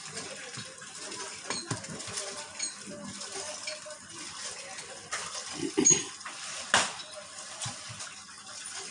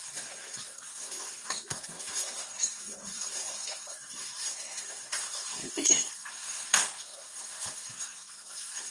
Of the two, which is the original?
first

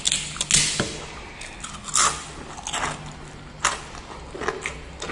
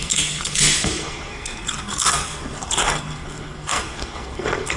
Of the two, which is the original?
first